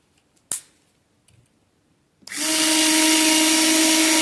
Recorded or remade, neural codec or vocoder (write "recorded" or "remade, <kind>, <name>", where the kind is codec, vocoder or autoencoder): recorded